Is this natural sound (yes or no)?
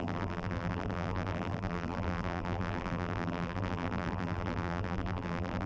no